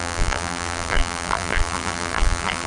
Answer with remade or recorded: remade